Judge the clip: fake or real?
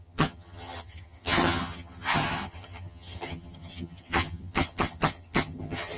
fake